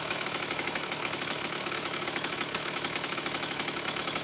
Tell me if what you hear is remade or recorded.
remade